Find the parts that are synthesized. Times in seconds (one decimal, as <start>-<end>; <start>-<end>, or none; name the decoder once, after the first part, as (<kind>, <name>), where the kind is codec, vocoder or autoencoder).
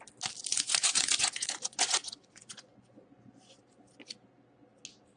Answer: 0.5-3.6 (vocoder, Vocos)